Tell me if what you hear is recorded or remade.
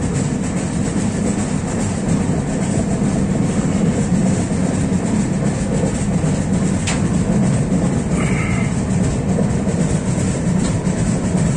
recorded